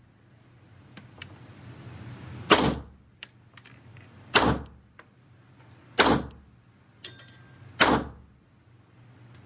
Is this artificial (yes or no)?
no